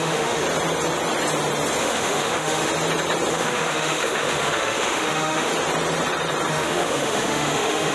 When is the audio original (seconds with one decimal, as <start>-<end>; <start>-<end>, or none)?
0.4-1.8; 2.7-3.3; 5.5-6.5